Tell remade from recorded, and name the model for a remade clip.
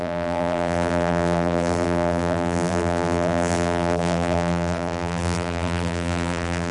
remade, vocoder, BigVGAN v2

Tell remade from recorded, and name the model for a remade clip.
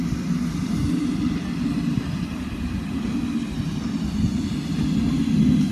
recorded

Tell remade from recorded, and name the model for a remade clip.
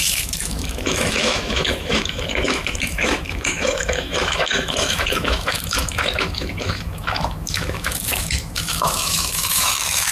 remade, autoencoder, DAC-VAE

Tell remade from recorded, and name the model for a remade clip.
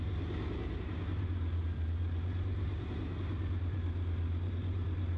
remade, vocoder, BigVGAN v2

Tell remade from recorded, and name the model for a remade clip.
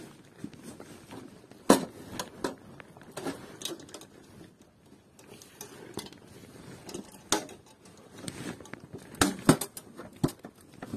recorded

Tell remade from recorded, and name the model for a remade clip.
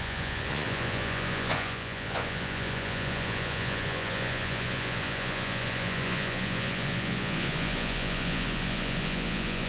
remade, vocoder, Vocos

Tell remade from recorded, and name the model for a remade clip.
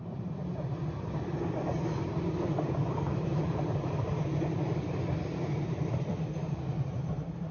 remade, vocoder, BigVGAN v2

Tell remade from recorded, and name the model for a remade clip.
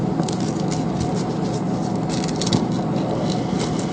recorded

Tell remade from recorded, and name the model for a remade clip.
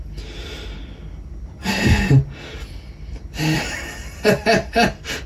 recorded